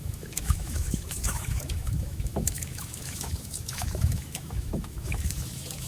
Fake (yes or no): yes